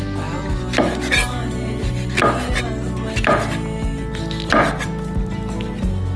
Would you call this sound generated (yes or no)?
no